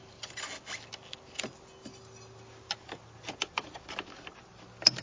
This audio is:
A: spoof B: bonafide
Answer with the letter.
B